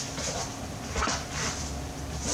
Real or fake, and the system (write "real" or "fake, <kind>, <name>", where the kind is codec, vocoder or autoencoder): real